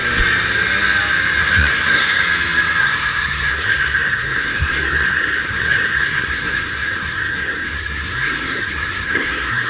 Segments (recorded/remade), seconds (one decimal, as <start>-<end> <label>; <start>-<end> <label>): 0.0-1.4 recorded; 1.4-2.2 remade; 2.2-2.8 recorded; 2.8-9.7 remade